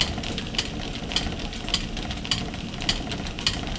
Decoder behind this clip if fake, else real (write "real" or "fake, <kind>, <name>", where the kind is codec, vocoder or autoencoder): real